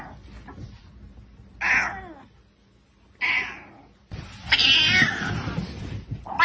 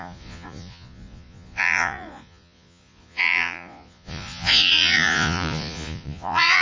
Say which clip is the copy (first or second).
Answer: second